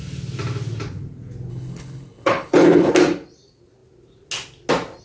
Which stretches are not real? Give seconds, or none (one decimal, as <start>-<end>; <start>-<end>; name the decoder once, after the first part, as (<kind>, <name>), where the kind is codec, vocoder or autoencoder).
1.5-2.9 (codec, HILCodec)